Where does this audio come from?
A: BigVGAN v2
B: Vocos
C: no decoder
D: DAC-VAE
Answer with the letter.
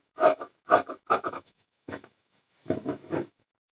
D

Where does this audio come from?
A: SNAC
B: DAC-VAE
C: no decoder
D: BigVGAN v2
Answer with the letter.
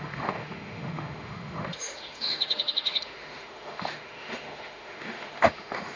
B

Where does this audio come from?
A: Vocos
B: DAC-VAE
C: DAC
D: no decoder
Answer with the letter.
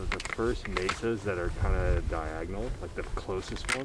D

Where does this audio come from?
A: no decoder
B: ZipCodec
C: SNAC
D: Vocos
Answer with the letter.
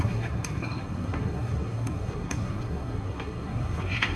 C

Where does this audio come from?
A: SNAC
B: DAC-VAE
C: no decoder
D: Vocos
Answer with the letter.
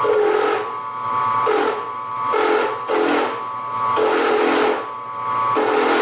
C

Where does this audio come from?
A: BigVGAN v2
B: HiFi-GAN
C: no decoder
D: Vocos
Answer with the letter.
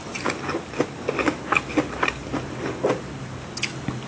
C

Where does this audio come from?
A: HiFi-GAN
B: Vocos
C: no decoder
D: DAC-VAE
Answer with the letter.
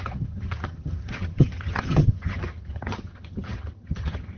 A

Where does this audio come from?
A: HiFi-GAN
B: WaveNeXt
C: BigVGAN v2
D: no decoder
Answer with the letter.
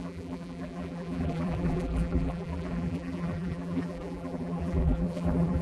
C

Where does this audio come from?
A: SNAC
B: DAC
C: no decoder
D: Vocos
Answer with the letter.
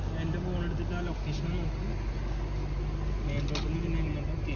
C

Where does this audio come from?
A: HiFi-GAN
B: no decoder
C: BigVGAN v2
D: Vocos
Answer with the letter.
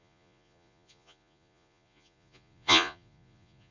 D